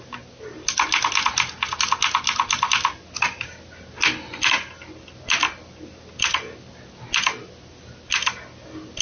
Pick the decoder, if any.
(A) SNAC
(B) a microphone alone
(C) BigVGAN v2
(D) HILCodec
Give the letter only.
B